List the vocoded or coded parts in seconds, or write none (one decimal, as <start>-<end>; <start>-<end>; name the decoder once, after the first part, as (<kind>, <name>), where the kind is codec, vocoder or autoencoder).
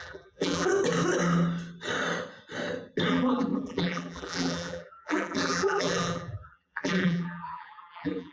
0.0-0.7 (vocoder, BigVGAN v2); 3.1-8.3